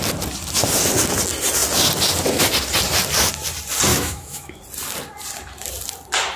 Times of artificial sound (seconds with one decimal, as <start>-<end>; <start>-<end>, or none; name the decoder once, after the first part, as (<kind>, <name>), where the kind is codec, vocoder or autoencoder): 3.9-4.6 (autoencoder, DAC-VAE)